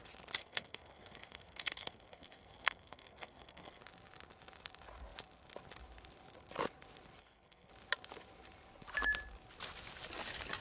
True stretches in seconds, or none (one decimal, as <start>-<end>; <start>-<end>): 0.0-0.4; 3.8-7.2; 7.7-10.6